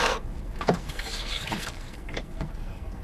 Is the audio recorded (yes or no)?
no